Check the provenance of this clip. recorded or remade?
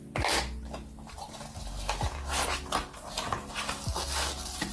recorded